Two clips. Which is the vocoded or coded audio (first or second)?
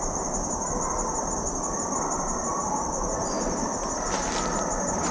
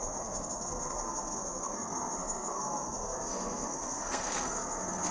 second